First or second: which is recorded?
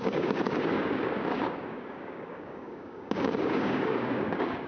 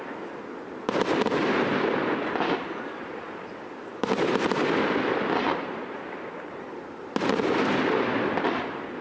second